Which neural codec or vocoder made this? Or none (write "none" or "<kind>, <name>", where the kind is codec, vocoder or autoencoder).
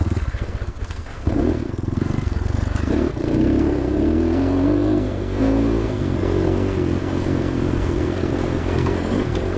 codec, SNAC